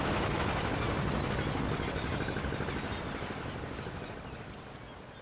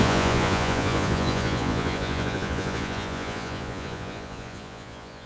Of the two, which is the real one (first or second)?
first